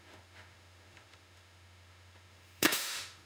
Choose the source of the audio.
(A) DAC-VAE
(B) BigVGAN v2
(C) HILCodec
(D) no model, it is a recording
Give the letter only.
A